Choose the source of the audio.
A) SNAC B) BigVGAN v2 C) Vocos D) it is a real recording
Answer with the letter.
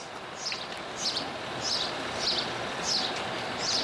D